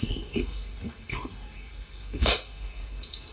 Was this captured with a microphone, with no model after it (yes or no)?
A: no